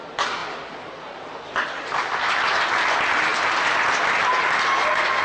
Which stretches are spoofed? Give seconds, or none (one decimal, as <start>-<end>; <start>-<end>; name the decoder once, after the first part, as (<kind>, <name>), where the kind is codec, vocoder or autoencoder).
none